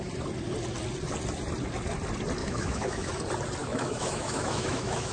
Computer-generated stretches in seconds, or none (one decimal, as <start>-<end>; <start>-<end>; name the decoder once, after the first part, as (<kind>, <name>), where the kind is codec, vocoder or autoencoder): 2.4-3.1 (autoencoder, DAC-VAE); 3.6-5.1

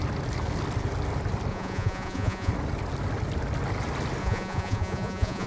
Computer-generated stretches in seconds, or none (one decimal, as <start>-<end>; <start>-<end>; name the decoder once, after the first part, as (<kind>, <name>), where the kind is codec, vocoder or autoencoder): 1.5-2.5 (vocoder, Vocos); 4.2-5.5

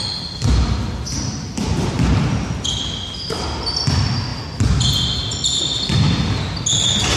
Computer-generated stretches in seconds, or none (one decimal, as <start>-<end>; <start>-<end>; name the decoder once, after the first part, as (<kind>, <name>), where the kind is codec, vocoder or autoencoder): none